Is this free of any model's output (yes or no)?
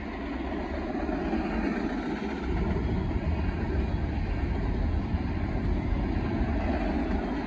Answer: yes